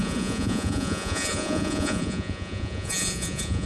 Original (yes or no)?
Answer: no